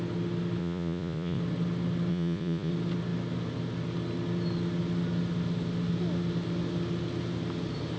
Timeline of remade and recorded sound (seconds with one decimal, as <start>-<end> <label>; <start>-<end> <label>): 0.0-0.6 recorded; 0.6-1.4 remade; 1.4-2.1 recorded; 2.1-2.7 remade; 2.7-8.0 recorded